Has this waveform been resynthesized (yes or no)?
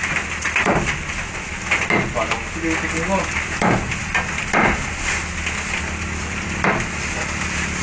no